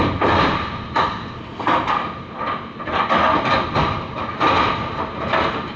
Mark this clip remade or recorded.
recorded